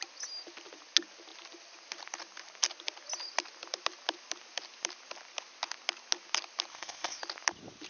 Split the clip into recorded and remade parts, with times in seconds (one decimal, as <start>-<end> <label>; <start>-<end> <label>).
0.0-6.7 recorded; 6.7-7.2 remade; 7.2-7.9 recorded